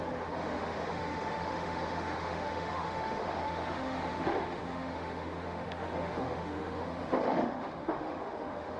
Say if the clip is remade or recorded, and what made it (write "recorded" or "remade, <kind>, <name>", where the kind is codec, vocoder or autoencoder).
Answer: remade, autoencoder, DAC-VAE